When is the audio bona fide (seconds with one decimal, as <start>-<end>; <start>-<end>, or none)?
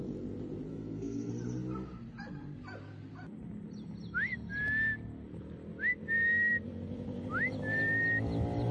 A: 0.0-0.7; 1.3-8.7